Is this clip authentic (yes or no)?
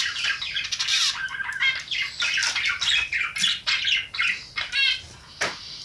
yes